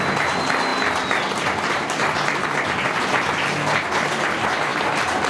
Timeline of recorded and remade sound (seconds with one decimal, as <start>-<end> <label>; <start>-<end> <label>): 0.0-5.3 recorded